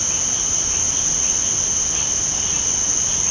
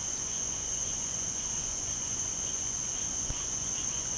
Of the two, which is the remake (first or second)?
second